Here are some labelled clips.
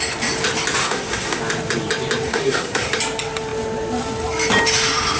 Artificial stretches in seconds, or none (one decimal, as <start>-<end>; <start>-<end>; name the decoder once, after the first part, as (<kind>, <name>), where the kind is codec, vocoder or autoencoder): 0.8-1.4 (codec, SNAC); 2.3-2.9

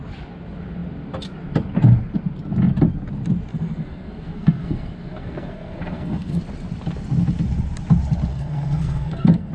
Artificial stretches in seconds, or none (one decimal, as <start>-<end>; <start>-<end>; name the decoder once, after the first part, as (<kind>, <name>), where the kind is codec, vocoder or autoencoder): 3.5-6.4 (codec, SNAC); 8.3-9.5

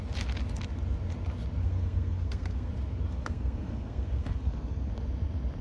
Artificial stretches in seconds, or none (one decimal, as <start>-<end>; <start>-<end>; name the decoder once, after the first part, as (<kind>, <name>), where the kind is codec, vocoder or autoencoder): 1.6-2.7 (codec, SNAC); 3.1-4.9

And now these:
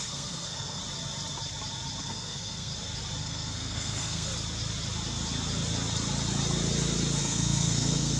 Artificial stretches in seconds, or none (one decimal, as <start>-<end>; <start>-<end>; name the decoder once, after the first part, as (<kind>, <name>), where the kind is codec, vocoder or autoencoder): 0.0-0.8 (codec, SNAC); 2.0-2.7; 3.2-4.3; 7.2-8.2

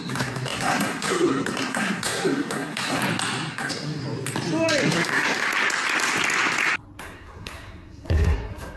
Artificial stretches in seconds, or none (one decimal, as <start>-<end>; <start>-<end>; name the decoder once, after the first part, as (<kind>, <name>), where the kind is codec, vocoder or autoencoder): 0.0-3.0 (codec, SNAC); 3.5-4.0; 4.8-5.5; 7.0-8.8

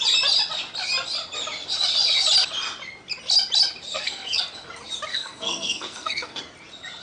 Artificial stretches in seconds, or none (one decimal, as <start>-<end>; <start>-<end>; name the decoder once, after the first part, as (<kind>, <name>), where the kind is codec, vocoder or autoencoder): 3.9-4.4 (codec, SNAC); 5.1-6.4

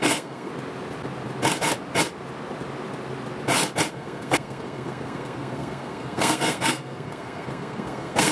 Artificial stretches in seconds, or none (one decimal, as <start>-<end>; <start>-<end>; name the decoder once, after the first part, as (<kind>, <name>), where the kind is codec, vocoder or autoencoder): 0.0-0.5 (codec, SNAC); 3.9-8.3

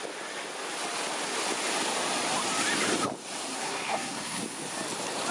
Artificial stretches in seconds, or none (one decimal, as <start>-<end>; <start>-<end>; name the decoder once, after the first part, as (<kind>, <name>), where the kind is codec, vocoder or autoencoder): 3.5-4.4 (codec, SNAC)